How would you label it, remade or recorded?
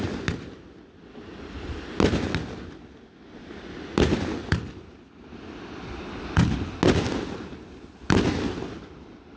recorded